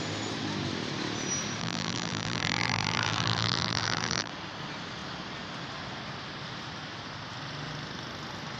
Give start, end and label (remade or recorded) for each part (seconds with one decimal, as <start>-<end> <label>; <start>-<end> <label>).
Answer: 0.0-1.6 recorded; 1.6-4.3 remade; 4.3-8.6 recorded